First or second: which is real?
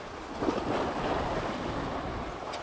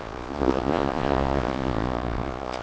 first